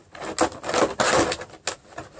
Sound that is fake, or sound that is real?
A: real